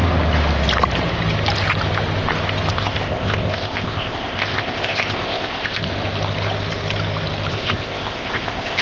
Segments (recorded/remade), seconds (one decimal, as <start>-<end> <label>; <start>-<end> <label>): 0.0-2.7 recorded; 2.7-5.8 remade; 5.8-7.5 recorded; 7.5-8.8 remade